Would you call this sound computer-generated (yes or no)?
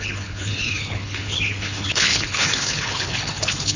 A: yes